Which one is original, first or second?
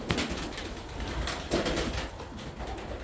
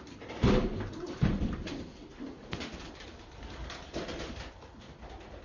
first